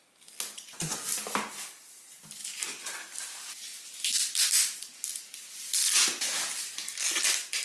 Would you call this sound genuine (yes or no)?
yes